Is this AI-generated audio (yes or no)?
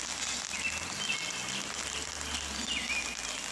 no